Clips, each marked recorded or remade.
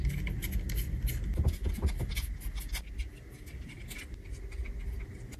recorded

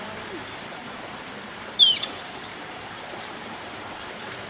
remade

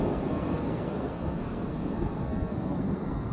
remade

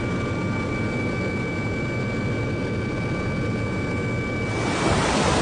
recorded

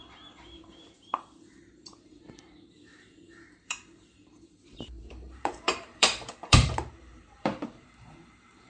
remade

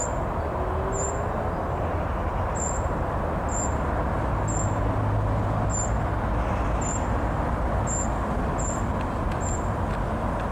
recorded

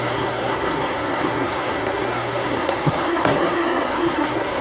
remade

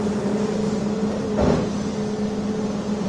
recorded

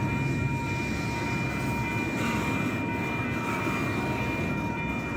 recorded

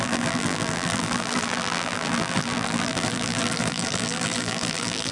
remade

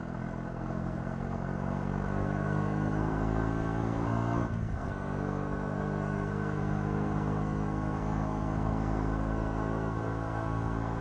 remade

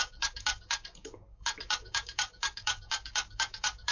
remade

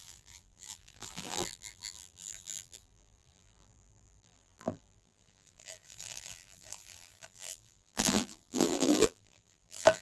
remade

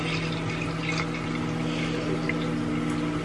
recorded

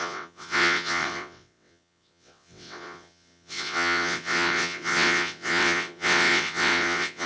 remade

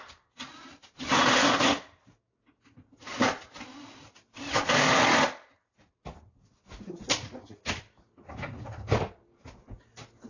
recorded